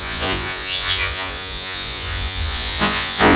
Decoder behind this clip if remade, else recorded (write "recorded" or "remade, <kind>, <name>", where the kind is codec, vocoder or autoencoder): remade, vocoder, Vocos